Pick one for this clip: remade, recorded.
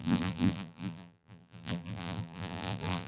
remade